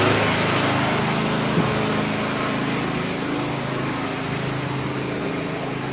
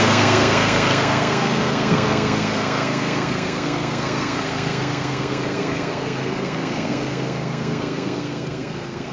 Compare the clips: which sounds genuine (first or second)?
first